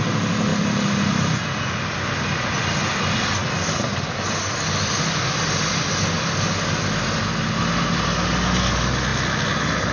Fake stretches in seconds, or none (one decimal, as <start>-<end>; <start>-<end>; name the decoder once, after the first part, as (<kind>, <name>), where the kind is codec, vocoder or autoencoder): none